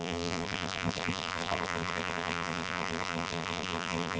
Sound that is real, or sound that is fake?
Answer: fake